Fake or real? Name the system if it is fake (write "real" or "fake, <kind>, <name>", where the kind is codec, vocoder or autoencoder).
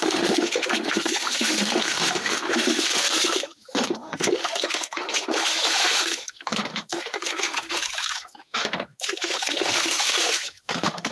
fake, autoencoder, DAC-VAE